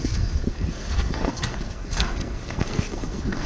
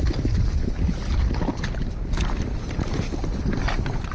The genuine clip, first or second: second